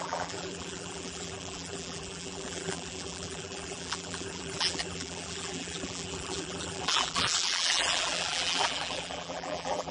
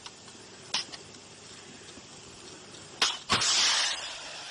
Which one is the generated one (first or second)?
first